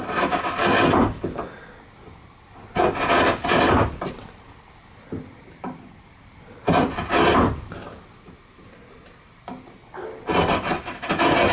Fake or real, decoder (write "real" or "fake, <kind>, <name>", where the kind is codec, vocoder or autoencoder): real